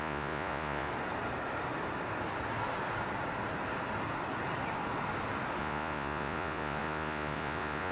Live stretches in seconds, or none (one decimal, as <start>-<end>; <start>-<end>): 0.9-5.6